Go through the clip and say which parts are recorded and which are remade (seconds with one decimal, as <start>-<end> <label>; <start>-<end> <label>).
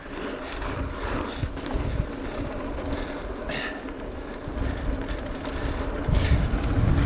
0.0-7.1 recorded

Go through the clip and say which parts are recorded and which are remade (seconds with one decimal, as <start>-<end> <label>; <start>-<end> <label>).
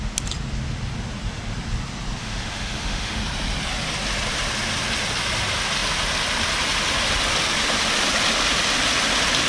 0.0-2.2 recorded; 2.2-3.2 remade; 3.2-9.5 recorded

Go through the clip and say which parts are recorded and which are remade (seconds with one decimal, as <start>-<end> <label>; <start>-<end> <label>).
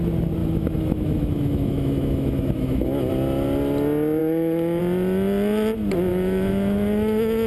0.0-0.4 recorded; 0.4-3.1 remade; 3.1-4.2 recorded; 4.2-4.8 remade; 4.8-6.1 recorded; 6.1-7.5 remade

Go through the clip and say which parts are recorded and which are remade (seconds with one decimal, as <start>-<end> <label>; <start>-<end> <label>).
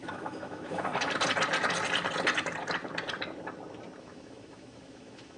0.0-0.9 remade; 0.9-4.0 recorded; 4.0-5.4 remade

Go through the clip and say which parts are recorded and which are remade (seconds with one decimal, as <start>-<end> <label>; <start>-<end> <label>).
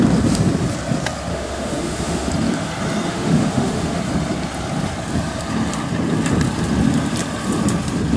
0.0-1.3 recorded; 1.3-2.3 remade; 2.3-3.1 recorded; 3.1-4.0 remade; 4.0-8.2 recorded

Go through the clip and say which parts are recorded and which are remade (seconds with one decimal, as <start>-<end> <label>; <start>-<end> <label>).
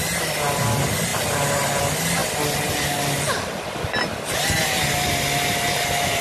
0.0-6.2 recorded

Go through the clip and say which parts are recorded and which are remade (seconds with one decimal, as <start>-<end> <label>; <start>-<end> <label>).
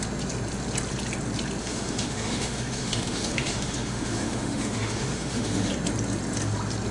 0.0-1.6 recorded; 1.6-5.7 remade; 5.7-6.9 recorded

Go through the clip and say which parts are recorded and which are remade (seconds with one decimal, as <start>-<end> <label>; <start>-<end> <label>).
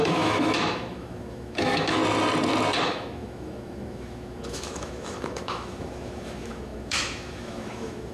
0.0-2.0 remade; 2.0-2.8 recorded; 2.8-8.1 remade